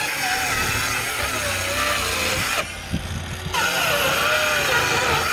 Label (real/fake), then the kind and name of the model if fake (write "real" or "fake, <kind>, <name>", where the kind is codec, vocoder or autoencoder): real